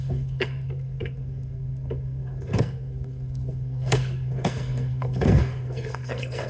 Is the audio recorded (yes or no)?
no